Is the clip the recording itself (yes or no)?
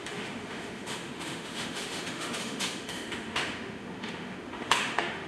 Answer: no